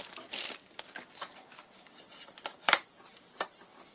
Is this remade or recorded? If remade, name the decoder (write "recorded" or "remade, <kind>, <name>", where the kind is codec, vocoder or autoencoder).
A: recorded